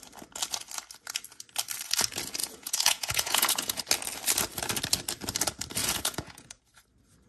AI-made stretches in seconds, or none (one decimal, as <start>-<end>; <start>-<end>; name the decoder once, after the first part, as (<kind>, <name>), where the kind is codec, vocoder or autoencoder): 2.4-3.8 (vocoder, Vocos); 5.8-6.6